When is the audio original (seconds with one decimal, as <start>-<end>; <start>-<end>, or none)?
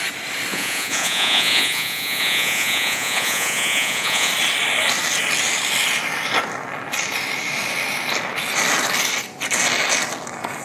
0.0-0.5; 4.3-10.6